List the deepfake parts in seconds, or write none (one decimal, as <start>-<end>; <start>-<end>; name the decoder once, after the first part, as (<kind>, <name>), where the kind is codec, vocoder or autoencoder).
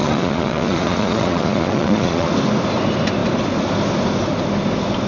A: 0.0-2.3 (vocoder, Vocos)